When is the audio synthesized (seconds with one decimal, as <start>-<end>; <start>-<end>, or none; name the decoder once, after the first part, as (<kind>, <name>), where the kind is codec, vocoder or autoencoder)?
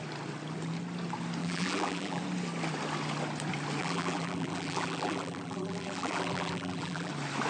1.4-2.2 (vocoder, BigVGAN v2); 3.8-7.1